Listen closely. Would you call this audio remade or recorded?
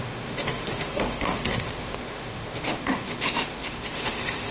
remade